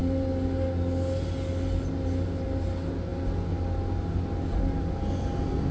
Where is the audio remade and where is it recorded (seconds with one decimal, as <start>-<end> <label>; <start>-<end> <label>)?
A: 0.0-5.7 recorded